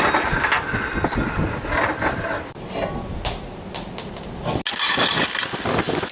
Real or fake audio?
real